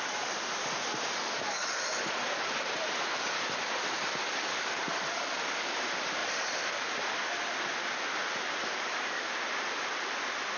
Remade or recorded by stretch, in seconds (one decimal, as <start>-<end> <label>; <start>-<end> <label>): 0.0-1.2 recorded; 1.2-1.8 remade; 1.8-4.5 recorded; 4.5-5.7 remade; 5.7-8.6 recorded; 8.6-9.2 remade; 9.2-10.6 recorded